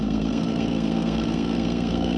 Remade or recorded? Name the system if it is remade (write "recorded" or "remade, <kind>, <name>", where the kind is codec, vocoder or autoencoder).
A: remade, codec, SNAC